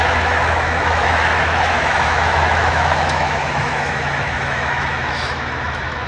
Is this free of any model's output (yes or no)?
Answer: no